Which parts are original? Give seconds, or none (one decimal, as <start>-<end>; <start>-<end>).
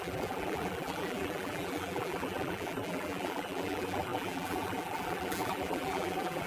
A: none